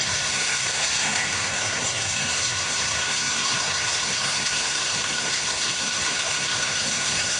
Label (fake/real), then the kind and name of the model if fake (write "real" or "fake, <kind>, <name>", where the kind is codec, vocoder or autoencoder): fake, codec, SNAC